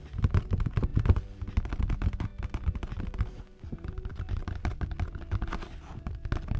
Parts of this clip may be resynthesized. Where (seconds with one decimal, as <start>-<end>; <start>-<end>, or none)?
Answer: none